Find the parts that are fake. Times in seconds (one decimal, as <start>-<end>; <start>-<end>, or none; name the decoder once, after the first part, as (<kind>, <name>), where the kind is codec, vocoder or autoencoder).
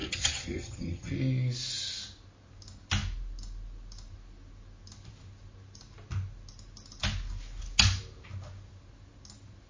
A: 0.0-1.1 (vocoder, HiFi-GAN)